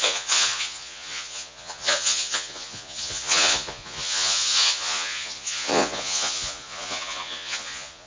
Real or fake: fake